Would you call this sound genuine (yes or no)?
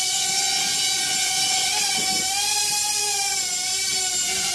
no